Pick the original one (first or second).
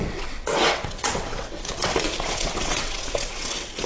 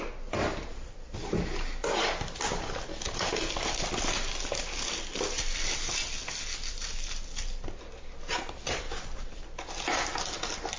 second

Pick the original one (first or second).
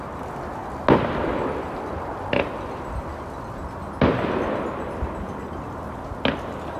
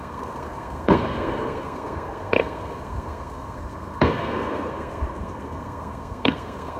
first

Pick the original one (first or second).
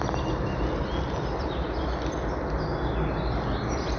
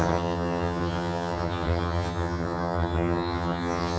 first